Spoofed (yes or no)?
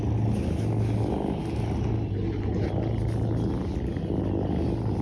no